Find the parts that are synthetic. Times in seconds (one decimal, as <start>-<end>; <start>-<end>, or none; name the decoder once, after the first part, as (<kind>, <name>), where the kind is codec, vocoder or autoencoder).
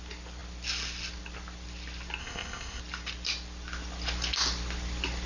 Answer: 2.2-2.8 (codec, ZipCodec)